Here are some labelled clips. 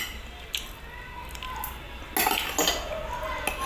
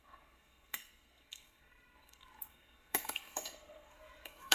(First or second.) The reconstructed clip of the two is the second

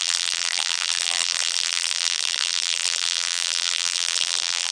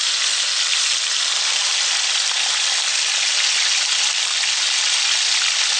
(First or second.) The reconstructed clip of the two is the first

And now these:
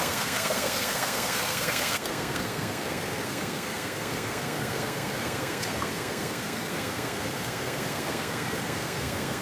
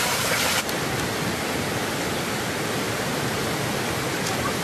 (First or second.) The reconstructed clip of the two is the first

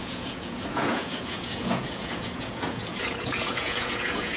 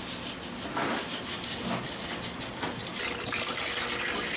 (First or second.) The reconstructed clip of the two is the first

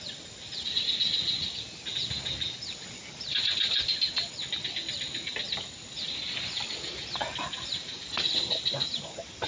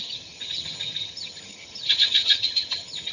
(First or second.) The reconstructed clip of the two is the second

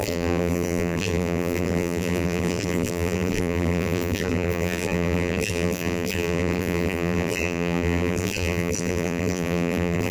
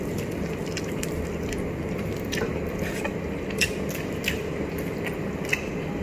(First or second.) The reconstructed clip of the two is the first